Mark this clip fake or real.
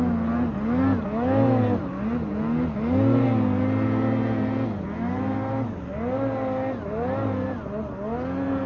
real